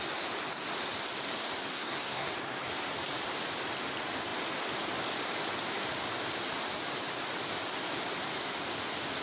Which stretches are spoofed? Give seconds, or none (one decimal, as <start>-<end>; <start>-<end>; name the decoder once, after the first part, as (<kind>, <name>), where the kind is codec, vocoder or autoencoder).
1.7-2.3 (codec, SNAC)